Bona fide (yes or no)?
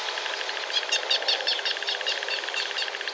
yes